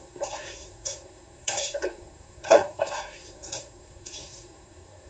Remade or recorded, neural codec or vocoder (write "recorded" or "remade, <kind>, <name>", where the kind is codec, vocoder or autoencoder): remade, codec, SNAC